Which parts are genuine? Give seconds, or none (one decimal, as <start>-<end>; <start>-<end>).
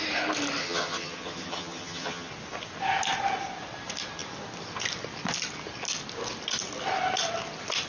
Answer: 0.0-0.6; 2.3-7.9